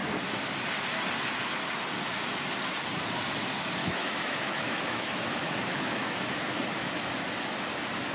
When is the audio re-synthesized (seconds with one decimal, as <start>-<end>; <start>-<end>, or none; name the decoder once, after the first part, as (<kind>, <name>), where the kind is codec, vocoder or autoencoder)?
3.8-6.4 (autoencoder, DAC-VAE)